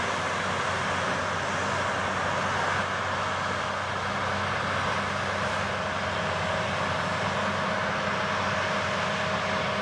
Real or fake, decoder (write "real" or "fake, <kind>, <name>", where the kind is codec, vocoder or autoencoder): real